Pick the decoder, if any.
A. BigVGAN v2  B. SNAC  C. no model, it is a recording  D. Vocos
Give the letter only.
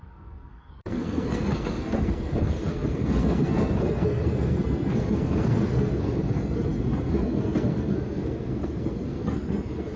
B